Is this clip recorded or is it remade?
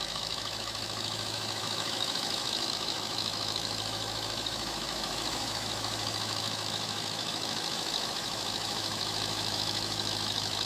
remade